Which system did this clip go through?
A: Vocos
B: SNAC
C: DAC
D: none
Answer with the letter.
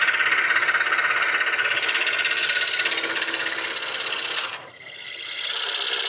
D